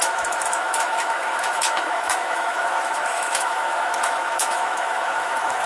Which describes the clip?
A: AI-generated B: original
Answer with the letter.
A